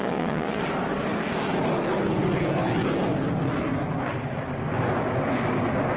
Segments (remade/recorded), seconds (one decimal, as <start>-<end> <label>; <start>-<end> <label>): 0.0-0.6 remade; 0.6-6.0 recorded